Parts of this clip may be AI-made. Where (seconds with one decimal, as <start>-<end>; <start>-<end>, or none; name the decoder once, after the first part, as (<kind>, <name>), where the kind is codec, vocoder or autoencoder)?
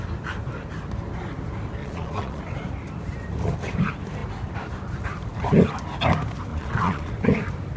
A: 1.8-2.4 (vocoder, Vocos); 6.5-7.1